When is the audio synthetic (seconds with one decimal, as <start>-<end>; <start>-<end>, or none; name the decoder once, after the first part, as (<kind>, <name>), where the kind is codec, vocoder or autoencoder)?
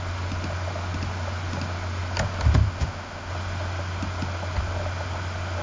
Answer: 2.6-3.3 (autoencoder, DAC-VAE)